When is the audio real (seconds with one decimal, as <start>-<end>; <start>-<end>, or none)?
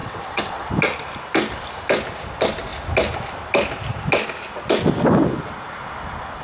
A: 0.7-6.4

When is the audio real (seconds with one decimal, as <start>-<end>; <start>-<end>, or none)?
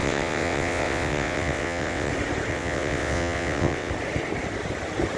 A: 2.1-2.5; 3.9-5.2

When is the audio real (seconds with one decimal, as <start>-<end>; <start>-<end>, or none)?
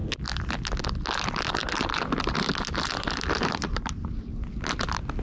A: 0.0-5.2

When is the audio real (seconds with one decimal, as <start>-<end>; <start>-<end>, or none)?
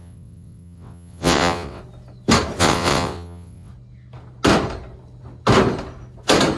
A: 1.8-2.6; 3.7-6.6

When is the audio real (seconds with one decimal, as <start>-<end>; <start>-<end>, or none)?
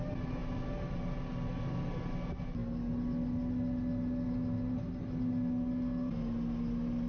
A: 0.0-7.1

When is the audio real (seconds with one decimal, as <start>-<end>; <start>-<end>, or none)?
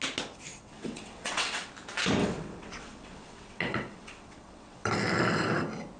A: 0.0-0.5; 1.7-2.2; 4.9-6.0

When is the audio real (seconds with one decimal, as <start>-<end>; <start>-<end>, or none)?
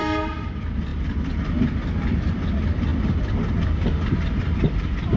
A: 0.0-5.2